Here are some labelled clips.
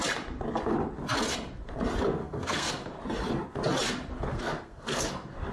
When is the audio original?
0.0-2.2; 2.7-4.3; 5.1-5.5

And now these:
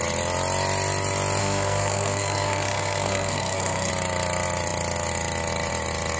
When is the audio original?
0.0-1.4; 3.9-6.2

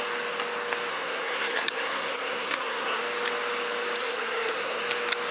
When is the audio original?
0.0-0.9; 3.0-4.0; 4.8-5.3

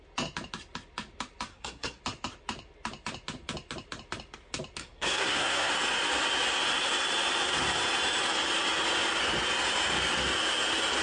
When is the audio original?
0.0-1.5; 2.0-4.8; 5.7-11.0

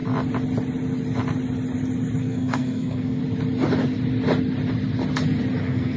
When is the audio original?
0.0-2.2; 3.2-5.6